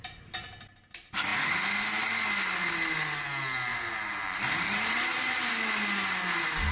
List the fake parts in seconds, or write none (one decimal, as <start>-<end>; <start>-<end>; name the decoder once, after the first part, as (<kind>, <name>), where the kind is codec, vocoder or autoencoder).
3.7-5.5 (vocoder, BigVGAN v2)